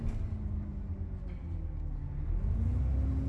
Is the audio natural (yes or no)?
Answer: yes